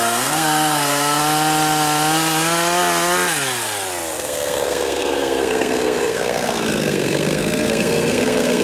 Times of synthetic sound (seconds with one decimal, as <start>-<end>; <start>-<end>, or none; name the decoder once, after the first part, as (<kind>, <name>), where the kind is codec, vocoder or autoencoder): 0.0-1.2 (codec, SNAC); 4.1-8.6